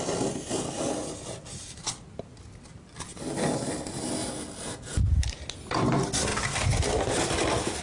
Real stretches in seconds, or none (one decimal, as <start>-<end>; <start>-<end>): 0.0-7.8